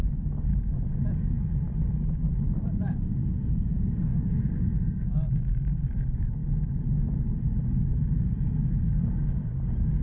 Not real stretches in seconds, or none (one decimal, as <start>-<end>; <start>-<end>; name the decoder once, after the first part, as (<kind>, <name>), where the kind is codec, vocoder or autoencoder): 0.0-0.5 (codec, DAC); 2.5-6.4; 7.7-10.0